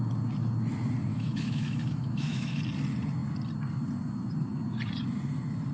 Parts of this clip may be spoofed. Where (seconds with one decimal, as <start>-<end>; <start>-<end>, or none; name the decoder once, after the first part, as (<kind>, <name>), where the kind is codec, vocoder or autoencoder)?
1.1-2.6 (autoencoder, DAC-VAE)